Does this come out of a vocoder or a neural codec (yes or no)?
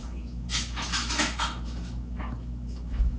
yes